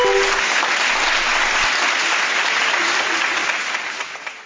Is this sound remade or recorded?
recorded